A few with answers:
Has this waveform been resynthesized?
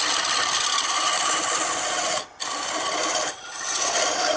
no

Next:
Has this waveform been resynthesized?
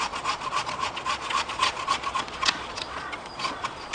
yes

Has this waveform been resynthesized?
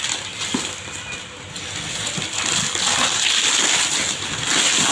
no